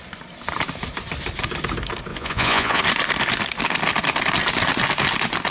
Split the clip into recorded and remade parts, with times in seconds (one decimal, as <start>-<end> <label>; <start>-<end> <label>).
0.0-2.1 recorded; 2.1-2.8 remade; 2.8-5.5 recorded